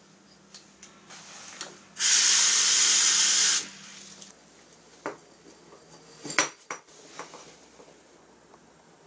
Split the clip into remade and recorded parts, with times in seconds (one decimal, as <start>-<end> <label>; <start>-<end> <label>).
0.0-6.4 recorded; 6.4-6.9 remade; 6.9-9.1 recorded